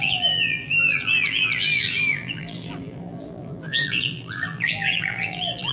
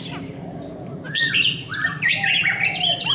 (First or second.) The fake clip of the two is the first